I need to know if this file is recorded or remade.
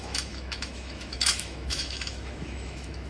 remade